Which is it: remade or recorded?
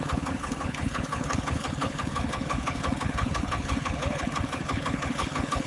remade